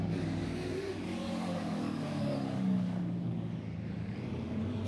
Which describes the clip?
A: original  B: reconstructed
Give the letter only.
B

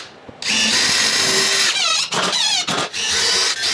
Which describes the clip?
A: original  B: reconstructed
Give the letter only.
A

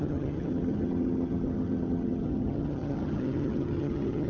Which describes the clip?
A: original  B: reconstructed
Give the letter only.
B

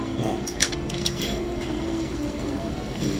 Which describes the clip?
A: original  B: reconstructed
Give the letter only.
B